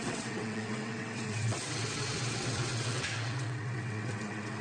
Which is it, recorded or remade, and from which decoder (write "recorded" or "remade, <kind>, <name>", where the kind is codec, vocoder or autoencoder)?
remade, vocoder, WaveNeXt